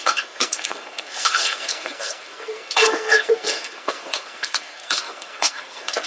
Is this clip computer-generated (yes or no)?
yes